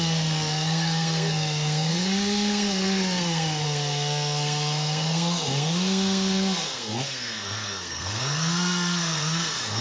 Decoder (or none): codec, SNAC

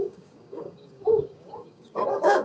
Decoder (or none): codec, DAC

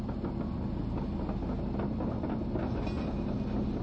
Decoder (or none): none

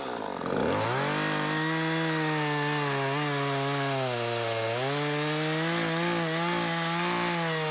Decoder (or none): none